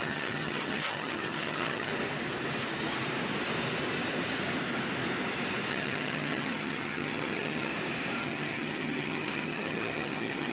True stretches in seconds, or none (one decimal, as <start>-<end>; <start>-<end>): 1.9-5.7; 7.7-8.2